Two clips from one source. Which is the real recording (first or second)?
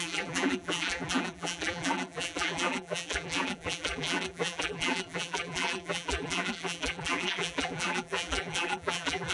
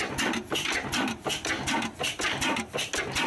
second